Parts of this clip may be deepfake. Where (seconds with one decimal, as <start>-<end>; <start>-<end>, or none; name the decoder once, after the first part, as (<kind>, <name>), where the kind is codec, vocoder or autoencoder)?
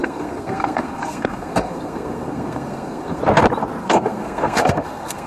0.0-3.2 (codec, SNAC); 3.8-5.3